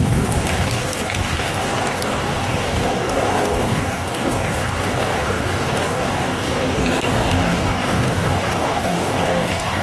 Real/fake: fake